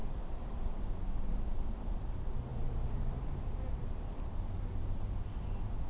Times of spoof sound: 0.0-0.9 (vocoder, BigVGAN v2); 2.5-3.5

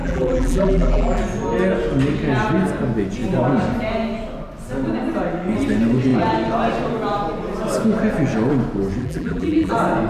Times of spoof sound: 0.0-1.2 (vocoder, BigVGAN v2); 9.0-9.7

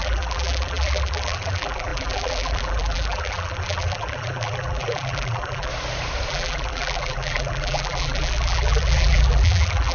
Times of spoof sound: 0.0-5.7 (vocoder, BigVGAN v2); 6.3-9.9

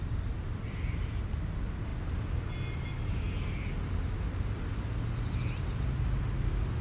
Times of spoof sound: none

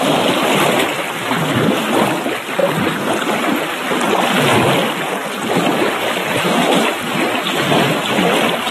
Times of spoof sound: 0.0-2.6 (vocoder, BigVGAN v2); 3.1-8.7

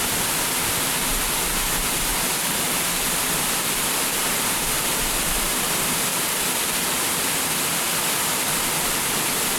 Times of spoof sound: 2.1-4.0 (vocoder, BigVGAN v2); 6.1-7.6